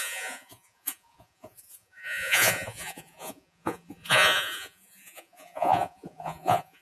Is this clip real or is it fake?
fake